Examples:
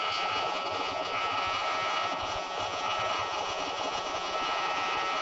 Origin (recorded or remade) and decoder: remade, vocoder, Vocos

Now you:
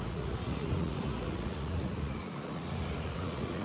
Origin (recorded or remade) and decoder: remade, vocoder, Vocos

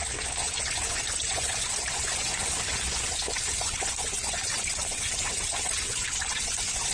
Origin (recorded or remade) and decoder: remade, vocoder, Vocos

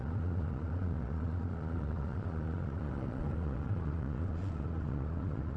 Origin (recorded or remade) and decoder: remade, vocoder, Vocos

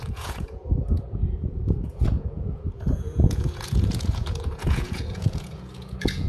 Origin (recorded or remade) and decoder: remade, vocoder, Vocos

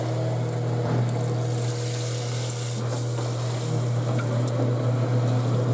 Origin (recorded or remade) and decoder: recorded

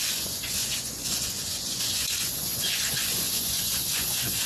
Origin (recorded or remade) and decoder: remade, vocoder, Vocos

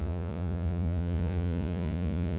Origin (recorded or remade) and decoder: remade, vocoder, Vocos